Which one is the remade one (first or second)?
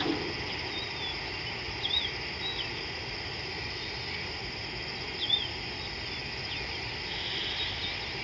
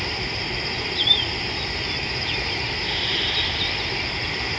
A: second